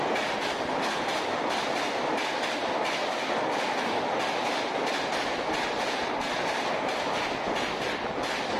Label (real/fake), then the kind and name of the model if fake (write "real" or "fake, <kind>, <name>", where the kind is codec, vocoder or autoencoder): real